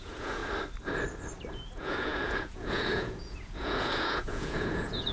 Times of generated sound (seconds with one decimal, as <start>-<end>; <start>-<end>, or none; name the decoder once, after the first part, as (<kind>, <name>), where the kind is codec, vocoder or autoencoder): 0.0-0.4 (vocoder, Vocos); 1.5-5.1